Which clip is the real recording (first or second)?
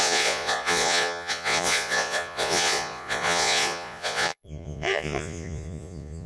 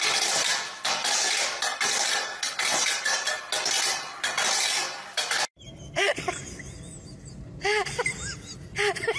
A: second